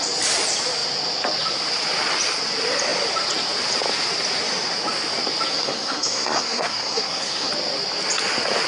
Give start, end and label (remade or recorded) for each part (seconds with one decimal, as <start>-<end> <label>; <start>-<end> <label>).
0.0-5.5 recorded; 5.5-7.5 remade; 7.5-8.7 recorded